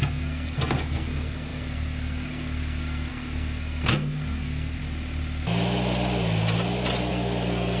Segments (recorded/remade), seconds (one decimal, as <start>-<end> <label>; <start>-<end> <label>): 0.0-4.8 remade; 4.8-7.1 recorded; 7.1-7.8 remade